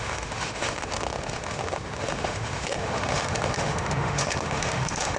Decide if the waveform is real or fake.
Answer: fake